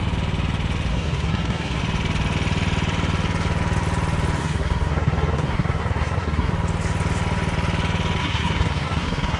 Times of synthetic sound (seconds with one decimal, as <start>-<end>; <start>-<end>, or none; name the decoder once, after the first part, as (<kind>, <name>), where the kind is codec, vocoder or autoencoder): 0.9-1.8 (codec, SNAC); 4.4-6.5; 8.2-9.4